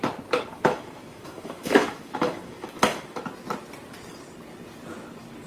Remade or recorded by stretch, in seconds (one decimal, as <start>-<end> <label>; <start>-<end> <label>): 0.0-0.5 recorded; 0.5-3.2 remade; 3.2-5.5 recorded

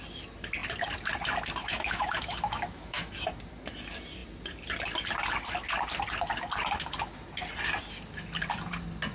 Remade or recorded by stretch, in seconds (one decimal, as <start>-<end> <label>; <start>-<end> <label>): 0.0-1.6 recorded; 1.6-3.1 remade; 3.1-9.1 recorded